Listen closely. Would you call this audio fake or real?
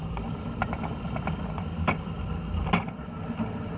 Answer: real